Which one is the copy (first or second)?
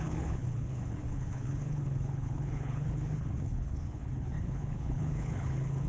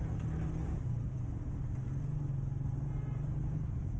first